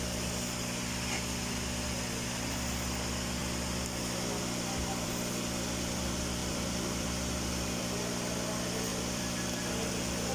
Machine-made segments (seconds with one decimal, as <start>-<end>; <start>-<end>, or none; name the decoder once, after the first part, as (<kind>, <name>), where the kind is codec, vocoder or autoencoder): 3.4-5.1 (vocoder, BigVGAN v2); 6.4-7.8; 8.9-9.7

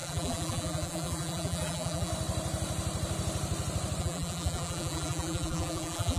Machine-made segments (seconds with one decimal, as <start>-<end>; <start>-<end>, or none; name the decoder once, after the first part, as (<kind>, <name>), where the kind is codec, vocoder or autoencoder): 0.0-2.1 (vocoder, BigVGAN v2); 4.0-6.2

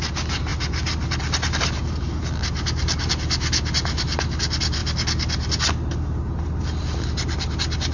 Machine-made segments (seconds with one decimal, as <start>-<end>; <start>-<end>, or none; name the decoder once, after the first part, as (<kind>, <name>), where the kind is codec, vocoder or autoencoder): none

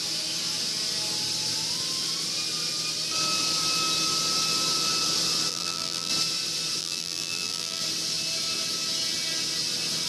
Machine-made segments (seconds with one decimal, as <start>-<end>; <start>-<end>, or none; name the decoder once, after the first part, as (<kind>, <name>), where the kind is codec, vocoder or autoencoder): 5.5-6.1 (vocoder, BigVGAN v2); 6.8-7.8

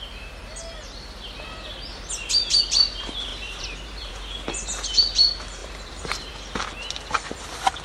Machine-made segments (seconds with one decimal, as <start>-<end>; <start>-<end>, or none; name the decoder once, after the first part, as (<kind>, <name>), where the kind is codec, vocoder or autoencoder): 3.3-4.1 (vocoder, BigVGAN v2); 5.6-6.3

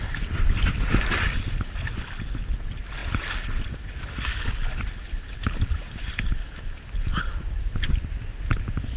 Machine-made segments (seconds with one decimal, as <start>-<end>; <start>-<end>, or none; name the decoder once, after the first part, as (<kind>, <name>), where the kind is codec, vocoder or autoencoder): none